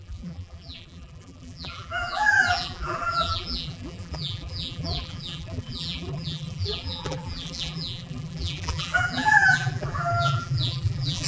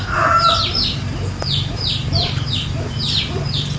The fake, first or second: first